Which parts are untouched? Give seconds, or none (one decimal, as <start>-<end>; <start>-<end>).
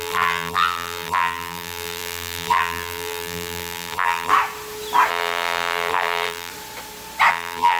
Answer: 4.3-5.1; 6.5-7.3